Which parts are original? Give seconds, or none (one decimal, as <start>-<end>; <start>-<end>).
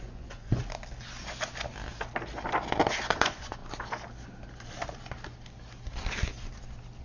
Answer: 0.6-2.9; 3.6-7.0